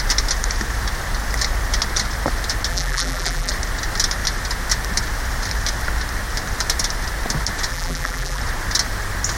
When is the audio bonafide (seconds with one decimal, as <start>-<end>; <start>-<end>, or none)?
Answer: 0.0-2.7; 3.5-7.7; 8.4-9.4